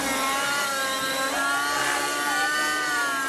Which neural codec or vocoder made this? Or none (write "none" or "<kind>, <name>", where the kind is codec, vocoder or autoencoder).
none